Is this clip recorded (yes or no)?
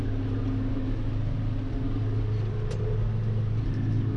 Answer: yes